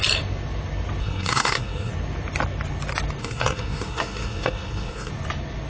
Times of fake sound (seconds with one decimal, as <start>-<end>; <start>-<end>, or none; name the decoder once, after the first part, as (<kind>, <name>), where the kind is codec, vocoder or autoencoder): 1.0-1.9 (codec, SNAC); 3.2-5.1